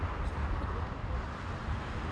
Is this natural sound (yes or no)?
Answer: yes